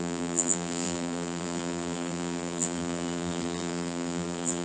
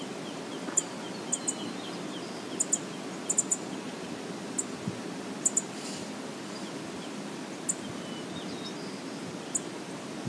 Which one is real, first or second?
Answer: second